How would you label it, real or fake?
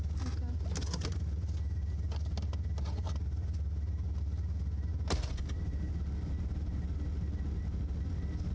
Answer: real